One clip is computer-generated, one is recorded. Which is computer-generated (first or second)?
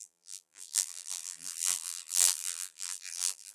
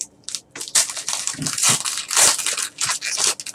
first